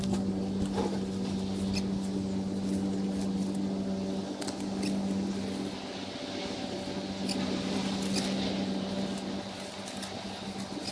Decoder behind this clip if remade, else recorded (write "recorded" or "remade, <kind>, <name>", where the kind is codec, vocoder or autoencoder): recorded